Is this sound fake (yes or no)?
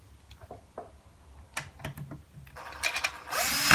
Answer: no